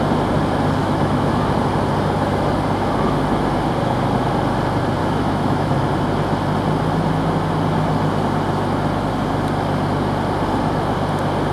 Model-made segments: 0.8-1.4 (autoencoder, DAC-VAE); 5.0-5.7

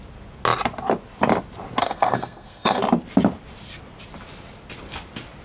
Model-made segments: 1.8-2.8 (codec, SNAC)

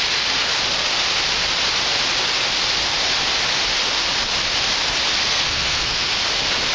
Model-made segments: 5.2-6.2 (codec, SNAC)

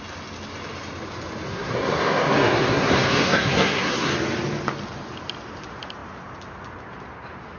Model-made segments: 1.5-4.1 (codec, SNAC)

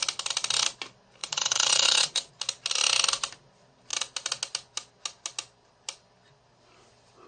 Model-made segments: 1.2-2.3 (vocoder, Vocos)

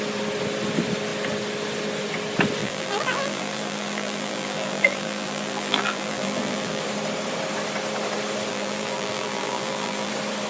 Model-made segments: 2.6-6.8 (vocoder, BigVGAN v2); 8.5-10.1

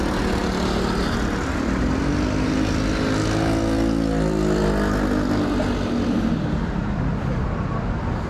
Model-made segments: none

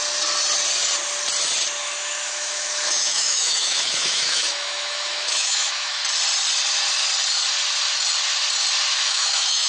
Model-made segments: 1.8-6.0 (autoencoder, DAC-VAE); 8.9-9.7